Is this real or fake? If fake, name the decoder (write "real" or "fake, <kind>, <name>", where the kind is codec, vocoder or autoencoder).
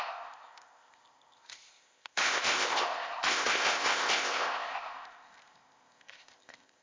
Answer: fake, codec, ZipCodec